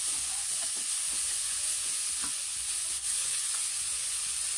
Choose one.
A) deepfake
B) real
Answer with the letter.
A